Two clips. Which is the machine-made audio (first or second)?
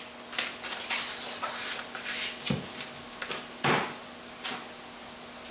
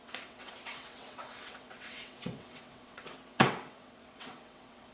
second